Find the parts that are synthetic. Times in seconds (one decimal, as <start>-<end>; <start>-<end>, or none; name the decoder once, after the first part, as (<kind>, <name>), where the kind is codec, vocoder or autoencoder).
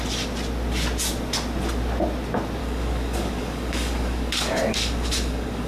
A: 2.6-5.7 (codec, DAC)